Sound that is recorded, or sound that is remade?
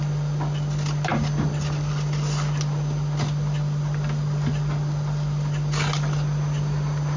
recorded